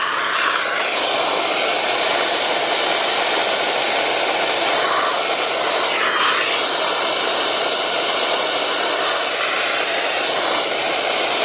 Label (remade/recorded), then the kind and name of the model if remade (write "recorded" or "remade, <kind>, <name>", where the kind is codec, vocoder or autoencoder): recorded